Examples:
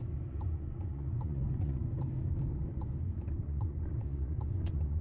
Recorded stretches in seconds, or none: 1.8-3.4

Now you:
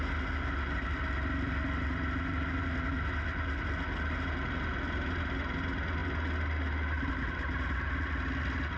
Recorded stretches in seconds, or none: 0.0-8.8

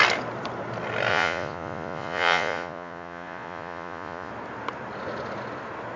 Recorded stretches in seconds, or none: 0.0-1.1; 4.3-6.0

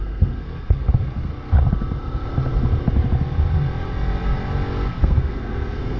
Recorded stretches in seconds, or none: 1.3-4.9